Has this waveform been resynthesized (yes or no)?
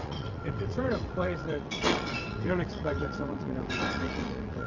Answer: yes